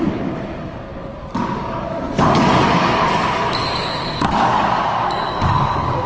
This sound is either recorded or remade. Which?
remade